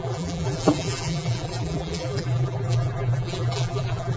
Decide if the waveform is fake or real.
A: fake